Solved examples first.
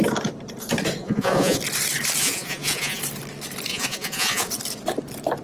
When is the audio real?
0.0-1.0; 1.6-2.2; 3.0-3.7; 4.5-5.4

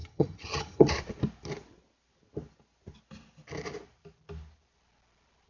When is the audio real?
0.9-5.5

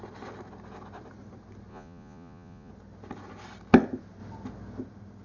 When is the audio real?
0.0-1.7; 2.7-5.2

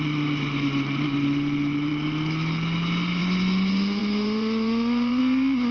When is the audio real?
0.0-4.0; 5.2-5.7

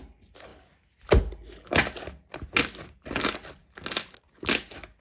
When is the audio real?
0.0-5.0

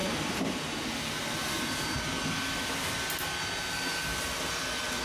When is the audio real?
0.0-5.0